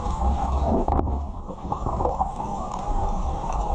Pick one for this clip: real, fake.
fake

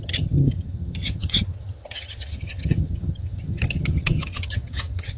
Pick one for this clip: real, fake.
fake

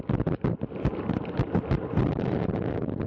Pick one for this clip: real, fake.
fake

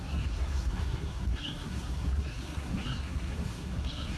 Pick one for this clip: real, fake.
fake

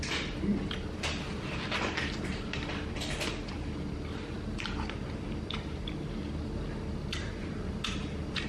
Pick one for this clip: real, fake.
fake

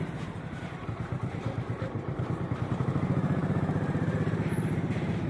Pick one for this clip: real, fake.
fake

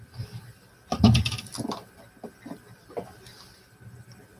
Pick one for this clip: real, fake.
real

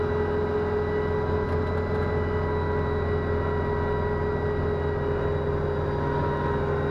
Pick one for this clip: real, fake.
real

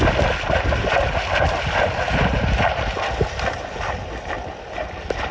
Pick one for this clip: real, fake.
real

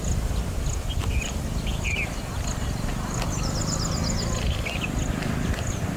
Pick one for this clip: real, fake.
real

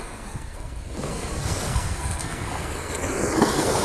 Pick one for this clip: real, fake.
fake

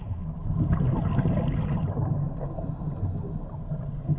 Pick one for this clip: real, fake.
real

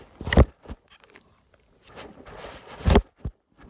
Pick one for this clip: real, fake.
real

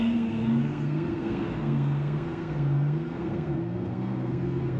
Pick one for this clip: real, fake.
fake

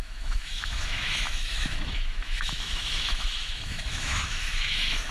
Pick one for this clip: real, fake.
fake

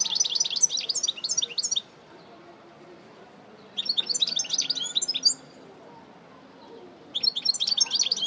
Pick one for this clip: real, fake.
real